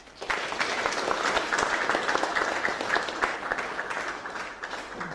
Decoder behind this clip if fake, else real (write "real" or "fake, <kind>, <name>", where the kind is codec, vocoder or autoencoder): real